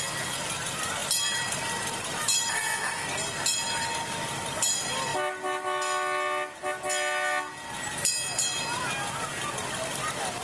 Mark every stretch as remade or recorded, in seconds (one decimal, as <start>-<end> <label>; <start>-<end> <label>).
0.0-10.4 recorded